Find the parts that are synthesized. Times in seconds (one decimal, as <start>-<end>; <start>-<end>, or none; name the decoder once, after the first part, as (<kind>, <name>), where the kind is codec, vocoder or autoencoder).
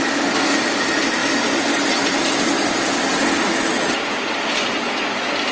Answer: none